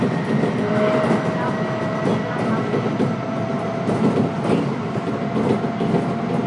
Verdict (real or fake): real